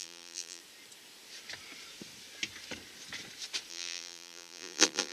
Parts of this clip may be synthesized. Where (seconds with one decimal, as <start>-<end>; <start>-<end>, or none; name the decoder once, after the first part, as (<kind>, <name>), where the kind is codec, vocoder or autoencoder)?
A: 0.0-0.6 (vocoder, BigVGAN v2); 3.7-5.1